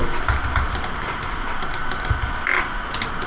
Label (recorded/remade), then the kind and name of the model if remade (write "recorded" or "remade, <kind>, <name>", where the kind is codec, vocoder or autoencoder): recorded